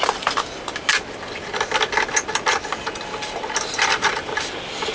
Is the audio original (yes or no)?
yes